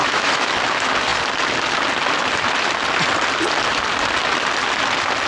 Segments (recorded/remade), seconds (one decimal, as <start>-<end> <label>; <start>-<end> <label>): 0.0-0.5 remade; 0.5-5.3 recorded

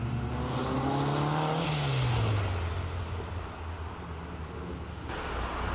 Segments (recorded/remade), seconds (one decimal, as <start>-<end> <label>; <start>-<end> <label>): 0.0-5.7 recorded

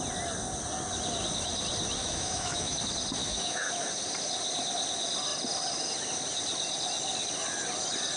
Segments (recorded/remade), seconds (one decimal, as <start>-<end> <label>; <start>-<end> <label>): 0.0-2.0 recorded; 2.0-2.8 remade; 2.8-3.2 recorded; 3.2-3.7 remade; 3.7-8.2 recorded

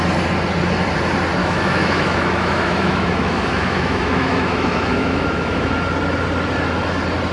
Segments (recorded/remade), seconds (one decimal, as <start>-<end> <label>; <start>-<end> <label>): 0.0-1.4 recorded; 1.4-5.7 remade; 5.7-7.3 recorded